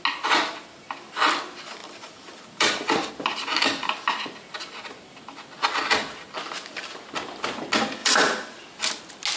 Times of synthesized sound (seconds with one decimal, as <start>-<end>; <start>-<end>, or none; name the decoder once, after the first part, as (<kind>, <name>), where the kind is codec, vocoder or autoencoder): 1.8-3.1 (vocoder, BigVGAN v2); 8.0-8.9